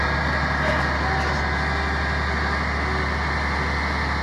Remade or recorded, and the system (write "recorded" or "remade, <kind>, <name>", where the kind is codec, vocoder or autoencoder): recorded